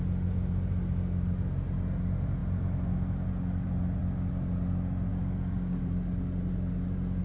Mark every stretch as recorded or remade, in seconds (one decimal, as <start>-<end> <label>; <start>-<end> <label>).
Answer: 0.0-5.1 recorded; 5.1-5.8 remade; 5.8-7.2 recorded